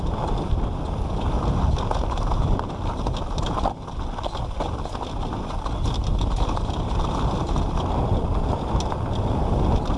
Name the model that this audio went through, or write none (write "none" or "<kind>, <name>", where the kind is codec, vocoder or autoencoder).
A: none